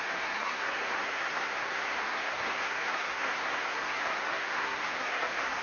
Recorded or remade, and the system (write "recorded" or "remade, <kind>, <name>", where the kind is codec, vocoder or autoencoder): remade, codec, SNAC